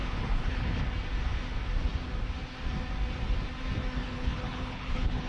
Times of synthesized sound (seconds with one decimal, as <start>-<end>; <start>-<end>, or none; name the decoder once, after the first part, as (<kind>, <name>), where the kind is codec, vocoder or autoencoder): 0.0-0.8 (codec, HILCodec); 4.0-5.3